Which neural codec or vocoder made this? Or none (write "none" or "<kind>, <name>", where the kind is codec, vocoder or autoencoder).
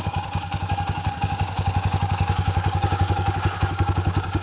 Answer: codec, DAC